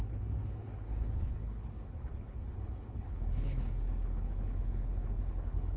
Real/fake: fake